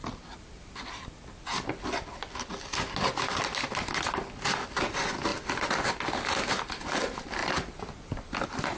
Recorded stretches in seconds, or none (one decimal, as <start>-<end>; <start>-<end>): 0.0-8.8